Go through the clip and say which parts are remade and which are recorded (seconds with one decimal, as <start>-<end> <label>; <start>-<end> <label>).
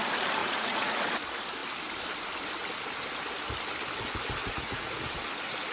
0.0-0.4 recorded; 0.4-1.0 remade; 1.0-4.4 recorded; 4.4-5.0 remade; 5.0-5.7 recorded